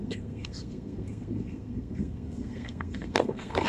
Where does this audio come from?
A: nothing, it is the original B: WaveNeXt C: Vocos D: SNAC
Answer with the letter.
D